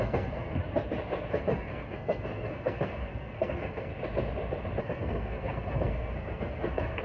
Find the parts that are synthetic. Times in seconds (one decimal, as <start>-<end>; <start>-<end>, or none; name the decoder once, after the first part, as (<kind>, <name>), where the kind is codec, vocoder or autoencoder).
0.0-0.6 (codec, SNAC); 1.3-3.9; 4.8-7.0